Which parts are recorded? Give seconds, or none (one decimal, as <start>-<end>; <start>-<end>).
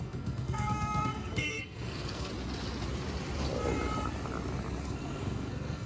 2.3-4.8